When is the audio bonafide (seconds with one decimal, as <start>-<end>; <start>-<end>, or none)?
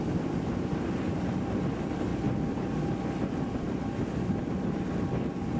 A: 0.0-5.6